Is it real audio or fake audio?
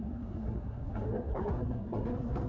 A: fake